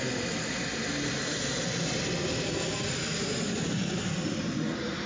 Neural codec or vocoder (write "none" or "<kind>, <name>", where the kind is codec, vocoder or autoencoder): none